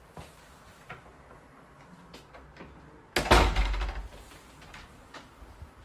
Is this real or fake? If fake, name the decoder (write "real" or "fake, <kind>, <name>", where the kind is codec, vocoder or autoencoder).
real